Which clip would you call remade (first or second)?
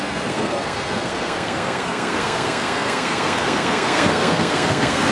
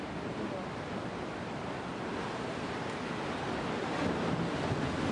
first